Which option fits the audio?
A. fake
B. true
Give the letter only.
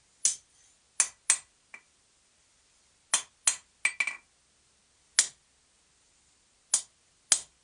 B